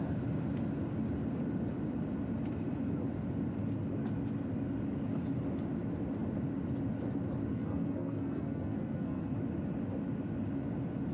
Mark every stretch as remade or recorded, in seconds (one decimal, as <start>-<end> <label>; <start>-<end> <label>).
0.0-7.5 recorded; 7.5-9.3 remade; 9.3-11.1 recorded